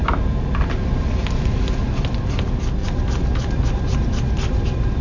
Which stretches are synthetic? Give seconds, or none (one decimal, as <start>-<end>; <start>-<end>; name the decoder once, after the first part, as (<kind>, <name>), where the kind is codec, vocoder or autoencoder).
2.8-3.7 (vocoder, BigVGAN v2)

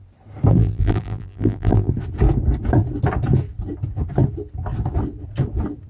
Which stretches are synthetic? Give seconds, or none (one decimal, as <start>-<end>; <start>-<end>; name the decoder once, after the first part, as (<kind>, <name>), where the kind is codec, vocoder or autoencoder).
0.5-1.9 (vocoder, BigVGAN v2)

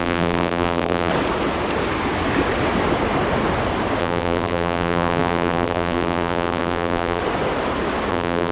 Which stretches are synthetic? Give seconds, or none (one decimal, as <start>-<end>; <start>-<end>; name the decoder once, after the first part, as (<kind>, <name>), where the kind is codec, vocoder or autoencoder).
0.0-1.1 (vocoder, BigVGAN v2); 4.0-7.2; 8.1-8.5

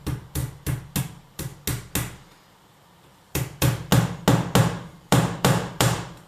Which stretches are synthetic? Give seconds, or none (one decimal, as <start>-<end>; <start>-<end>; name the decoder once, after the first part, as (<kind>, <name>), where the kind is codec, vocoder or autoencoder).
0.0-0.4 (vocoder, BigVGAN v2); 1.0-1.5; 3.1-3.9; 4.6-6.3